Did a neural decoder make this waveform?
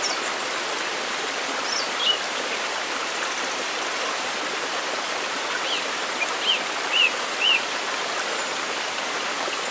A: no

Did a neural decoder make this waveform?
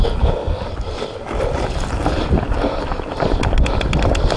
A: no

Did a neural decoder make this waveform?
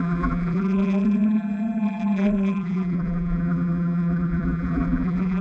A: yes